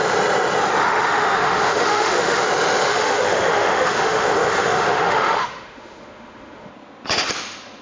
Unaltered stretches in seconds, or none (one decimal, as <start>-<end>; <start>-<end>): 0.0-0.8; 2.4-2.9; 6.7-7.8